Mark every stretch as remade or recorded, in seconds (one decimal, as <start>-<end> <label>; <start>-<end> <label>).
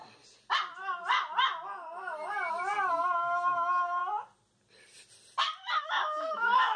0.0-2.9 recorded; 2.9-4.0 remade; 4.0-5.8 recorded; 5.8-6.8 remade